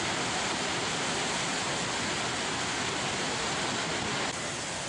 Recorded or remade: recorded